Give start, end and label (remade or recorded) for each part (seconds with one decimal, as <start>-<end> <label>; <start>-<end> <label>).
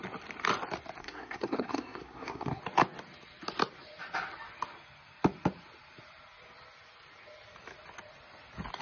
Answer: 0.0-1.0 recorded; 1.0-2.6 remade; 2.6-8.8 recorded